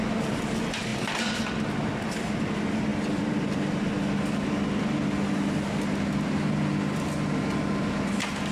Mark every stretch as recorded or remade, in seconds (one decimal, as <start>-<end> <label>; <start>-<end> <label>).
0.0-8.5 recorded